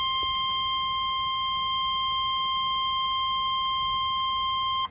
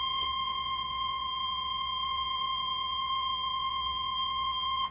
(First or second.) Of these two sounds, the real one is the first